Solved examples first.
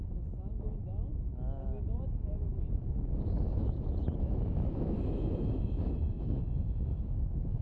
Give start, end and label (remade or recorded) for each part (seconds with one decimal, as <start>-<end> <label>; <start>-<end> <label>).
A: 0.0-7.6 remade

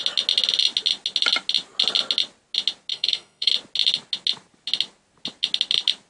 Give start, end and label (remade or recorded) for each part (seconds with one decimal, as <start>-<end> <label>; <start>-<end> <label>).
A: 0.0-2.9 recorded; 2.9-3.5 remade; 3.5-6.1 recorded

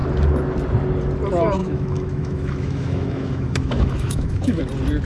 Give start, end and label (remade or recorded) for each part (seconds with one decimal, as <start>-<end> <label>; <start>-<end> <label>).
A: 0.0-1.6 recorded; 1.6-4.6 remade; 4.6-5.0 recorded